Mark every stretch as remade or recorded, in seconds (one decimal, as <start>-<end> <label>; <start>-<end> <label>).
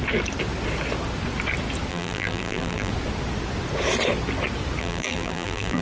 0.0-1.9 recorded; 1.9-2.9 remade; 2.9-4.8 recorded; 4.8-5.8 remade